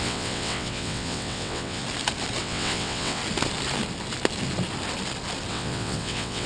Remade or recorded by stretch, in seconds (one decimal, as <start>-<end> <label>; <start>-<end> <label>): 0.0-1.8 remade; 1.8-2.4 recorded; 2.4-3.2 remade; 3.2-5.5 recorded; 5.5-6.5 remade

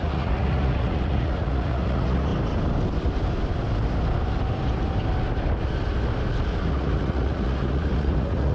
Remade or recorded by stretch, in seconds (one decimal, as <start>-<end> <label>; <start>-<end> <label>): 0.0-2.3 remade; 2.3-6.6 recorded; 6.6-8.5 remade

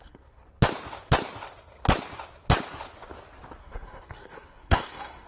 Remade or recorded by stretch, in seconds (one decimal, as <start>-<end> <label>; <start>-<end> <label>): 0.0-0.4 remade; 0.4-3.6 recorded; 3.6-5.3 remade